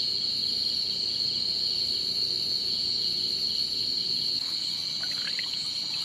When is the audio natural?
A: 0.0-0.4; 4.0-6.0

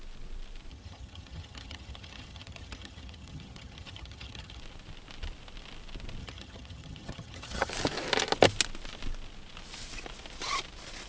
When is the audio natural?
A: 0.0-0.7; 4.6-6.2; 7.7-11.1

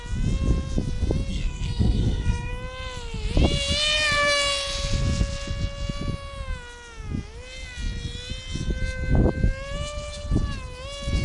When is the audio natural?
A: 0.0-1.3; 2.5-11.2

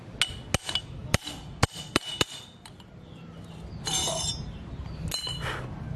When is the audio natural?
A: 0.0-1.0; 4.6-6.0

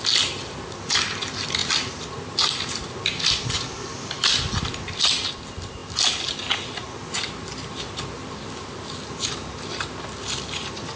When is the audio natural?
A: 0.0-11.0

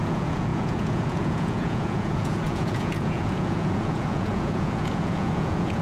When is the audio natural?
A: none